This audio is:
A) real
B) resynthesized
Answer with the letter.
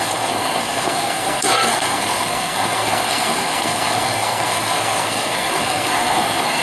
B